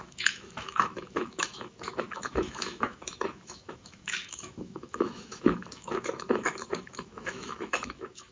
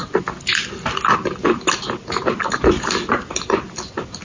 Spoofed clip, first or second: first